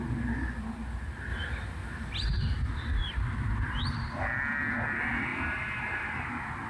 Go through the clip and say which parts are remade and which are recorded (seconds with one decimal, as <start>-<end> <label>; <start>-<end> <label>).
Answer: 0.0-3.0 recorded; 3.0-4.2 remade; 4.2-5.3 recorded; 5.3-6.2 remade; 6.2-6.7 recorded